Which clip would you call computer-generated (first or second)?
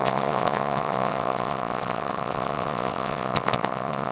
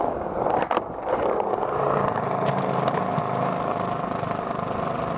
first